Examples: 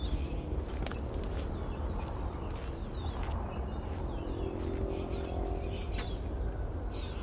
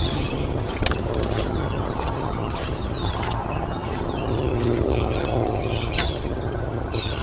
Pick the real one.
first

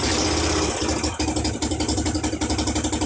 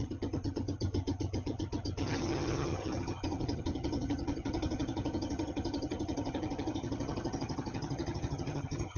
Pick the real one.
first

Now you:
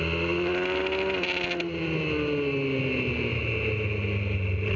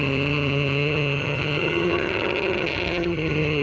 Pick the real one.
first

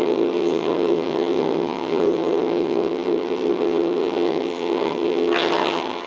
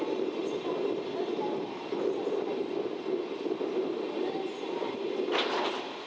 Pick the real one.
second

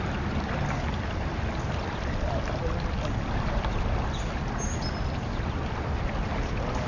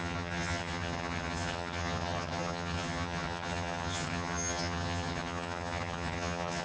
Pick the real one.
first